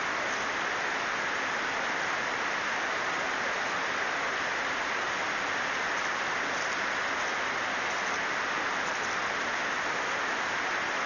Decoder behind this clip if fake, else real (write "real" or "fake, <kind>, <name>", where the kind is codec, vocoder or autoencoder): real